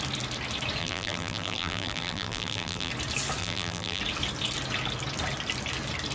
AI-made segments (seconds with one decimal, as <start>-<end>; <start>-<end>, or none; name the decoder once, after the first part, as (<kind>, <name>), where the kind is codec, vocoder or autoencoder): 0.8-2.9 (vocoder, BigVGAN v2); 3.4-4.0